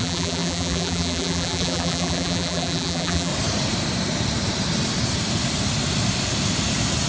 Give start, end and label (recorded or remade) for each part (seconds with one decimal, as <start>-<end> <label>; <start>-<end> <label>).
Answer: 0.0-3.3 remade; 3.3-7.1 recorded